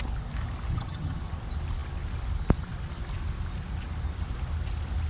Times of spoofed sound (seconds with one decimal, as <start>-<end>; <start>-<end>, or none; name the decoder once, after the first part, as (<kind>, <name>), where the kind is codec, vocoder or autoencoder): 0.7-1.2 (vocoder, HiFi-GAN)